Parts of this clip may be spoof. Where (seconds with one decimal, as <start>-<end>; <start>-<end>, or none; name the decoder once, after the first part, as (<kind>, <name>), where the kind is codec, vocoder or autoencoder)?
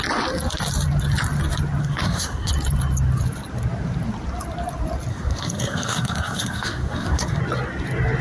1.8-2.5 (codec, SNAC); 5.1-7.4